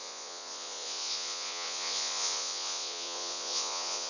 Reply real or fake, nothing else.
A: fake